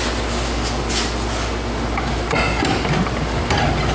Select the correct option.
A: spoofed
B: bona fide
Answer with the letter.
B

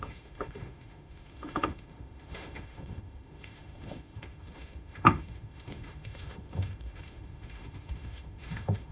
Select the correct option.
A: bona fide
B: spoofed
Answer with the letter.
B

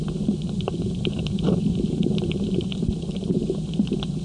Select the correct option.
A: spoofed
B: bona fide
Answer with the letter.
A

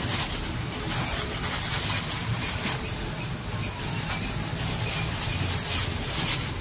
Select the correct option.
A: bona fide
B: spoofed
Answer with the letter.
A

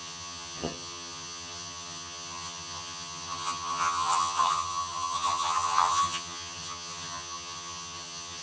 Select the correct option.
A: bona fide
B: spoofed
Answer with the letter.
B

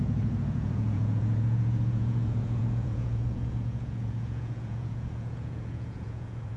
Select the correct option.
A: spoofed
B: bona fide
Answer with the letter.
A